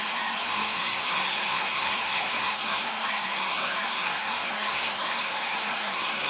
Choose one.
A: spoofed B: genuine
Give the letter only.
A